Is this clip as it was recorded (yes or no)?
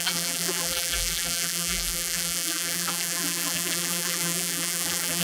no